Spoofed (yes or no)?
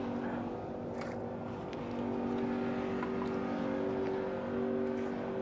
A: no